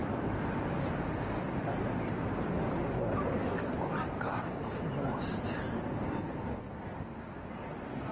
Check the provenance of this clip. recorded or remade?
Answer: recorded